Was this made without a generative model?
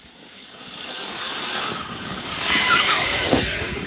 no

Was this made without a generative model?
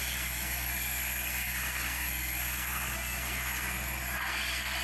no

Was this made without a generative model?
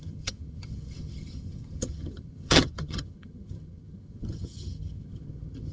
no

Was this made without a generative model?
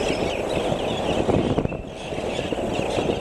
yes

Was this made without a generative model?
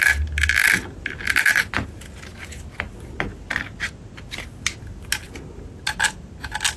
yes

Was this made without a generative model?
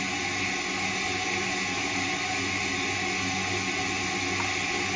yes